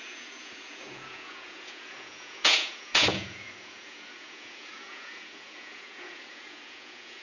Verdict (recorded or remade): remade